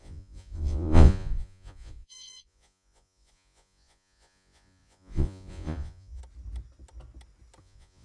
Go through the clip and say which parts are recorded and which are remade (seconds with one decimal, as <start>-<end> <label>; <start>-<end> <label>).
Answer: 0.0-6.2 remade; 6.2-7.6 recorded; 7.6-8.0 remade